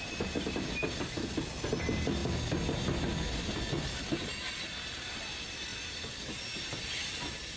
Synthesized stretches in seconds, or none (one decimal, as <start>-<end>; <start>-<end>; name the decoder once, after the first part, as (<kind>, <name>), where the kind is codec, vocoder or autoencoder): none